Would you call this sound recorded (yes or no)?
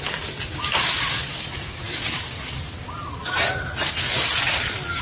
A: yes